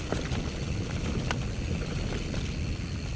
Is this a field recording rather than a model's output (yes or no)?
yes